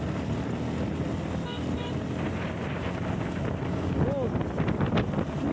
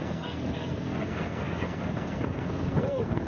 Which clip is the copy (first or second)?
second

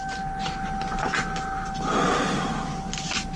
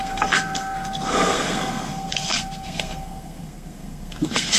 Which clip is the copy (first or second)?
second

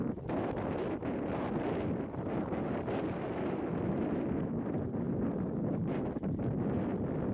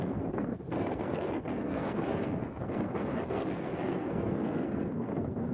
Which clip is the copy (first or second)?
second